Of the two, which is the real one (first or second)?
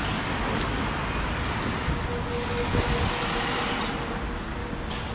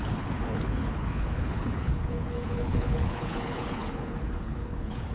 first